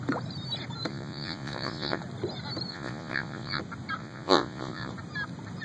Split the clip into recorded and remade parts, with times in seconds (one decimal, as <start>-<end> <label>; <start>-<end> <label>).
0.0-0.9 recorded; 0.9-2.0 remade; 2.0-2.7 recorded; 2.7-3.6 remade; 3.6-4.0 recorded; 4.0-4.9 remade; 4.9-5.6 recorded